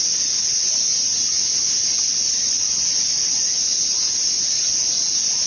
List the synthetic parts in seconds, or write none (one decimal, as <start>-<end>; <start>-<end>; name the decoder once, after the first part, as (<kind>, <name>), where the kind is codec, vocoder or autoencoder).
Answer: none